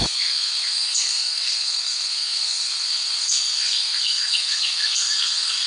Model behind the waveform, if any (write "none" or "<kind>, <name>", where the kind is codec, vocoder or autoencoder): codec, SNAC